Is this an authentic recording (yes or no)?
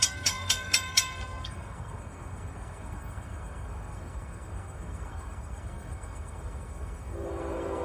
no